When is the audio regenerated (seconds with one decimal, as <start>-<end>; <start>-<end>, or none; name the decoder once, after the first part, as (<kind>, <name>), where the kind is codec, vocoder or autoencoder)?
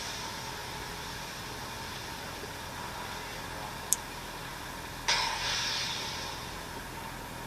none